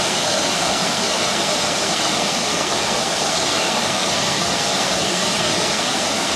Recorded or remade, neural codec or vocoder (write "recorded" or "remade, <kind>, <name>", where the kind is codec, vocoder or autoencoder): remade, codec, SNAC